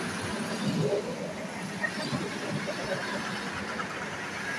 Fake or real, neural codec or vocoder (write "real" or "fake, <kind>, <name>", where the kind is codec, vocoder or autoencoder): real